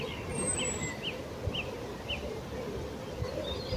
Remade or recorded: recorded